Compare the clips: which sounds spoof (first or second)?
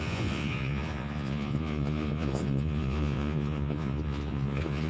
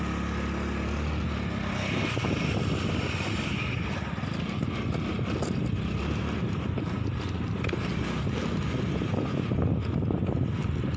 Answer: first